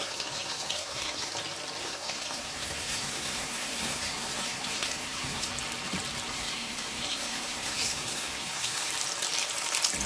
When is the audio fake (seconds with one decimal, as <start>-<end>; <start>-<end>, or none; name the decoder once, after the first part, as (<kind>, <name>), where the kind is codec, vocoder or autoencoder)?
0.0-1.3 (codec, SNAC); 1.8-5.5; 6.3-8.9